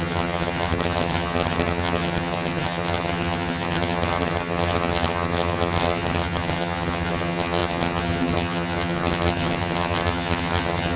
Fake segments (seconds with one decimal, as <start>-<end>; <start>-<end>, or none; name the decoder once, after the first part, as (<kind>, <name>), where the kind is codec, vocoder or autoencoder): 0.0-11.0 (vocoder, HiFi-GAN)